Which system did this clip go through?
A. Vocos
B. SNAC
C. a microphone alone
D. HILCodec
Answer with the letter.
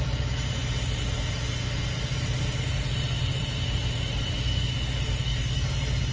C